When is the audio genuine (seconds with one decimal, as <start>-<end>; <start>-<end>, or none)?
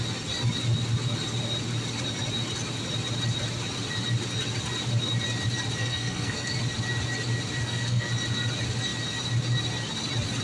0.0-5.8; 6.5-7.6; 8.1-10.4